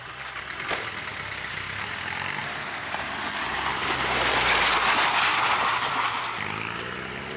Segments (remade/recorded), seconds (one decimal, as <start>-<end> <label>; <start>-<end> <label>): 0.0-7.4 recorded